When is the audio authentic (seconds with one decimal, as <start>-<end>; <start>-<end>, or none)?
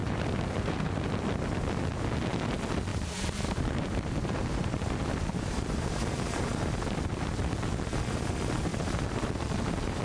1.1-2.9; 6.6-7.4; 8.0-8.7